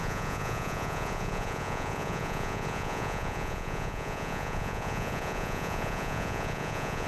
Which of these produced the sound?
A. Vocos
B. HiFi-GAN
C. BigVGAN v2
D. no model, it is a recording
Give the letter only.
A